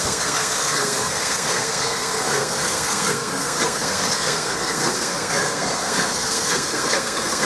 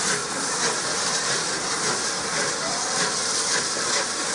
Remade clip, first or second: first